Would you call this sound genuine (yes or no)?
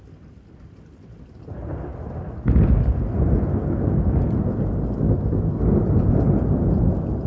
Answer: yes